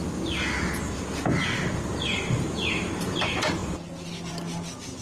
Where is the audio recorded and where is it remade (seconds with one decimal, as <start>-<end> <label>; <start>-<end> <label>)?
0.0-5.0 recorded